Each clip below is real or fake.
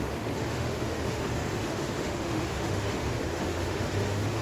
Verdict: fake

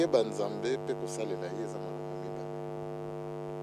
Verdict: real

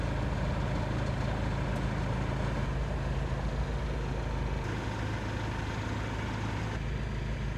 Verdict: real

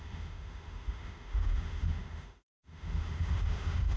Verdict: fake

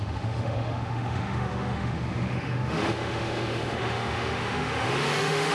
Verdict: fake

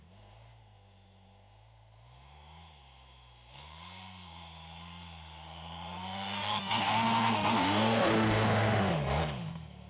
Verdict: fake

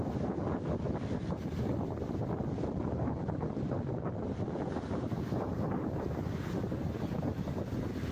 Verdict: real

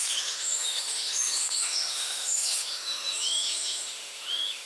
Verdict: fake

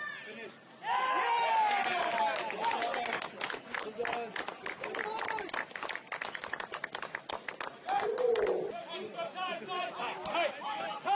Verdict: real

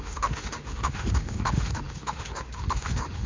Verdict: fake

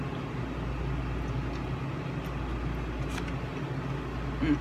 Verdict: real